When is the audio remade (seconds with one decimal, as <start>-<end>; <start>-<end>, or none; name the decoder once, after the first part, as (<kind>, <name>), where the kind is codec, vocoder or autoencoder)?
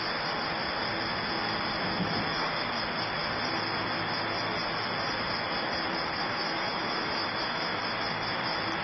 6.2-7.8 (autoencoder, DAC-VAE)